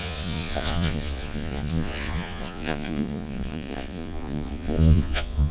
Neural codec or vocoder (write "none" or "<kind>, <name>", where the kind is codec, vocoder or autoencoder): vocoder, Vocos